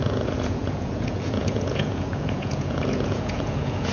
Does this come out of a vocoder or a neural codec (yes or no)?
yes